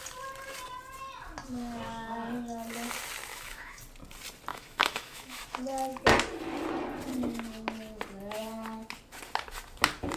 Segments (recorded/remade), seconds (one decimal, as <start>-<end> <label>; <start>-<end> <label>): 0.0-3.3 recorded; 3.3-3.8 remade; 3.8-4.5 recorded; 4.5-5.4 remade; 5.4-10.2 recorded